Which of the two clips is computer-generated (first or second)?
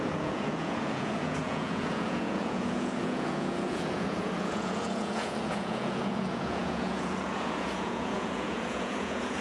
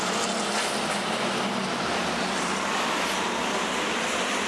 first